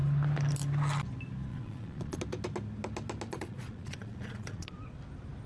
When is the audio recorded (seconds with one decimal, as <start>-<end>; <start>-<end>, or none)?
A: 0.0-1.5; 2.2-3.3; 5.0-5.5